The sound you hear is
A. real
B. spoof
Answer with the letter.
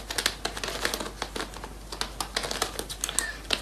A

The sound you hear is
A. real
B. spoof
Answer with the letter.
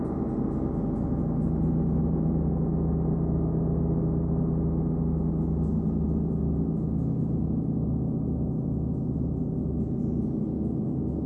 A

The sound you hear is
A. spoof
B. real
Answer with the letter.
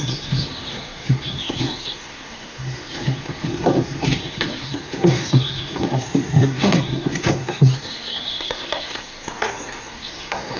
A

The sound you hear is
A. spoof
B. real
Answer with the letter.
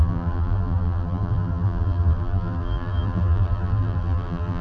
A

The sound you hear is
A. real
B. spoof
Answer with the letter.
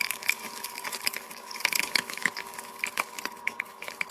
B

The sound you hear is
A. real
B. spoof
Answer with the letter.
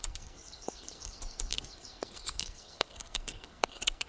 B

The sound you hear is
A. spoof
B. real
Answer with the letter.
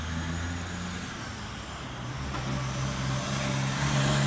B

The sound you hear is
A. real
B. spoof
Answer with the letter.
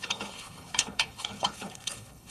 B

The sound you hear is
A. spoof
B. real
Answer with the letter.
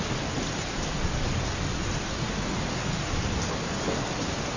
B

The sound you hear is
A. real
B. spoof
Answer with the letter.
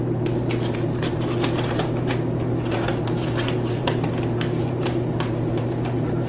B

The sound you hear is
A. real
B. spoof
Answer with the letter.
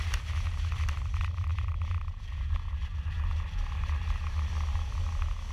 A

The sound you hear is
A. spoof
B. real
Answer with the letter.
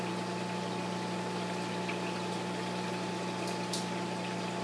B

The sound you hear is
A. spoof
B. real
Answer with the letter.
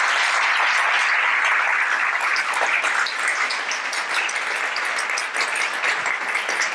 B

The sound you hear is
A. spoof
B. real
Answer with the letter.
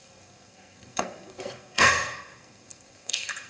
A